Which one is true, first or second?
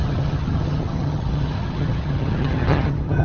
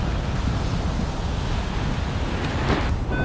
second